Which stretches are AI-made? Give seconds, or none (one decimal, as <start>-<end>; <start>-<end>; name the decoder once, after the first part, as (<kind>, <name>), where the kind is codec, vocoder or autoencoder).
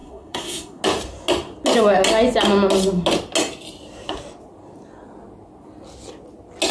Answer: 0.0-0.8 (codec, SNAC)